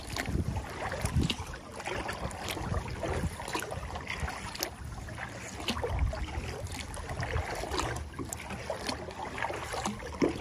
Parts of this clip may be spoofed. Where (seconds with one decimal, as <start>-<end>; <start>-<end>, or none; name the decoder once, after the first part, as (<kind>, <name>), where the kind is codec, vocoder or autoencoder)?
none